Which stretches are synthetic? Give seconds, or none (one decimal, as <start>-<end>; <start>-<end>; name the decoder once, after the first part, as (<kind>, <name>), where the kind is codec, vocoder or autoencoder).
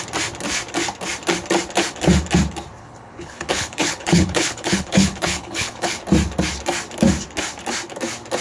2.8-6.0 (codec, HILCodec)